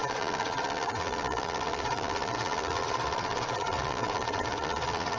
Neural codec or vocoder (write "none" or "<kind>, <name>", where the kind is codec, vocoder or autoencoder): vocoder, Vocos